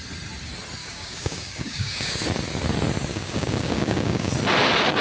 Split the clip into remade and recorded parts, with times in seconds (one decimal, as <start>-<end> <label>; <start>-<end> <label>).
0.0-0.8 recorded; 0.8-2.2 remade; 2.2-3.1 recorded; 3.1-4.3 remade; 4.3-5.0 recorded